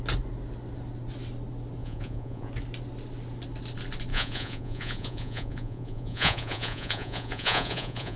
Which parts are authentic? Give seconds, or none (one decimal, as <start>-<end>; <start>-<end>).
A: 0.0-1.8; 2.5-4.1

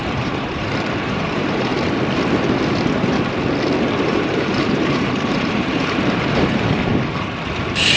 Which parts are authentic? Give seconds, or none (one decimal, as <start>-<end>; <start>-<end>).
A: 1.7-4.1; 6.9-8.0

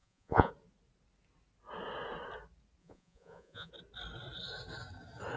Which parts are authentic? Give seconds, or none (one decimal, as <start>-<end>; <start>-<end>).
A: 0.5-2.8; 3.7-5.4

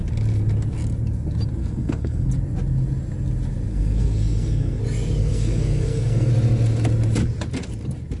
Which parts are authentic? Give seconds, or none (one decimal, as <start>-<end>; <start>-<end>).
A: 0.0-1.6; 2.3-3.7; 4.8-5.2; 6.3-8.2

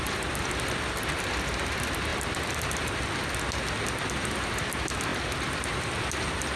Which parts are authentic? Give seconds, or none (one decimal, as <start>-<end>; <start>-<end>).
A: 0.0-6.6

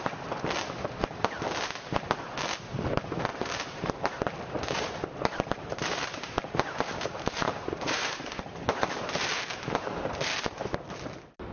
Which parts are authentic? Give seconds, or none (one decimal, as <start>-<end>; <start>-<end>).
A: 0.0-3.3; 8.4-11.5

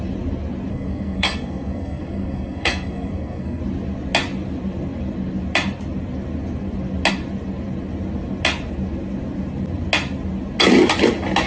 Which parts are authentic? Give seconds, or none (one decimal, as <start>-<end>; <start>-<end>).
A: 0.0-0.7; 3.6-11.5